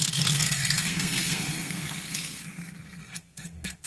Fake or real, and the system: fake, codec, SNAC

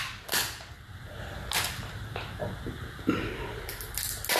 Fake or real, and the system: real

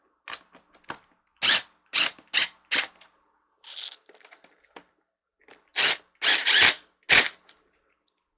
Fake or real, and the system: real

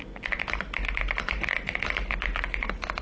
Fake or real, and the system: real